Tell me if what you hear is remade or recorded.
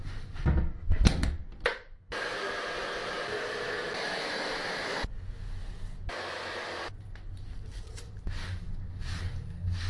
recorded